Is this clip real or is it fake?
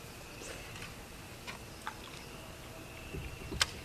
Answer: real